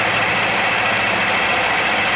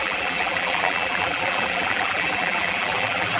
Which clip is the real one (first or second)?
first